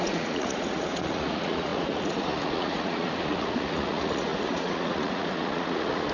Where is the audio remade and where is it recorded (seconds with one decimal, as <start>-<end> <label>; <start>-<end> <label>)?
0.0-6.1 remade